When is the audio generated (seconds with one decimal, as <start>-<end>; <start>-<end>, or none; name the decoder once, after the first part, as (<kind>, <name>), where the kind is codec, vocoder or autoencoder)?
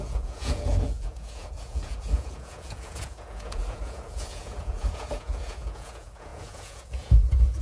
0.0-7.6 (vocoder, Vocos)